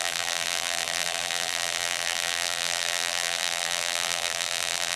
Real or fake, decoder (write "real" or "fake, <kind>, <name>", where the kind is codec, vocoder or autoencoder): fake, vocoder, BigVGAN v2